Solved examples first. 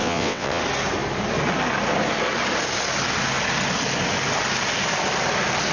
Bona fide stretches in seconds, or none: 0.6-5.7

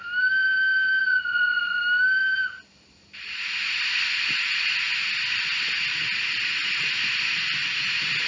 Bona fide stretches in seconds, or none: 0.0-1.1; 1.8-8.3

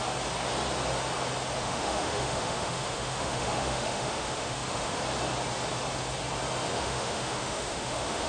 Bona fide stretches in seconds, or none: 0.0-1.6; 5.0-6.7

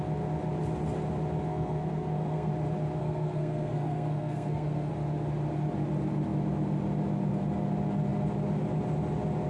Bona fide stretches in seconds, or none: 0.0-1.5; 2.5-3.0; 4.9-9.5